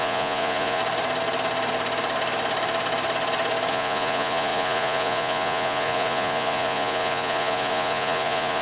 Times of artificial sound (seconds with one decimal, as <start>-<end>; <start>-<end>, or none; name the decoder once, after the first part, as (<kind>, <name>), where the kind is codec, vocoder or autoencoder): 0.0-0.8 (vocoder, Vocos); 3.7-8.6